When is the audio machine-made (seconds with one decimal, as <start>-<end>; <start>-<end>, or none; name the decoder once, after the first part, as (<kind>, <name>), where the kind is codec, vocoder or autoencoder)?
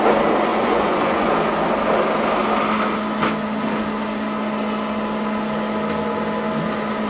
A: 0.5-1.3 (vocoder, Vocos)